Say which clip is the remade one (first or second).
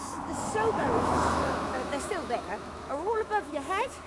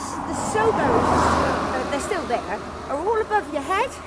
first